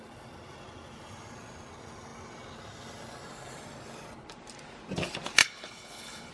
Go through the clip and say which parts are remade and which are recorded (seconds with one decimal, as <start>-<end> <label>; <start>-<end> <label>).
0.0-5.4 recorded; 5.4-6.3 remade